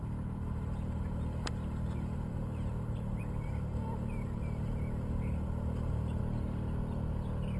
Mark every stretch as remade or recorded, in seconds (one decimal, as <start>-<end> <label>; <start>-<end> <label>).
0.0-6.2 remade; 6.2-7.6 recorded